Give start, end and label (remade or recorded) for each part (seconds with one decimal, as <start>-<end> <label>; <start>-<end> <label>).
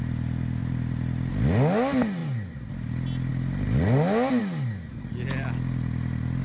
0.0-6.4 recorded